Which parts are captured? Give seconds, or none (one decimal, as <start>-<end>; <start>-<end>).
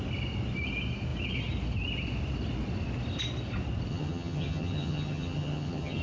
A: 0.0-3.9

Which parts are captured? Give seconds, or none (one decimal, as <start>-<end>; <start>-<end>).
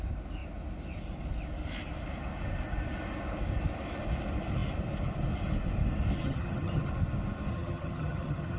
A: 0.0-6.2; 6.9-7.5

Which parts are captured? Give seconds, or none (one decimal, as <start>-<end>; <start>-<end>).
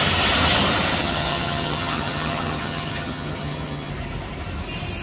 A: 0.0-1.0; 3.9-5.0